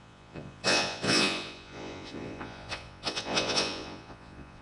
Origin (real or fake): fake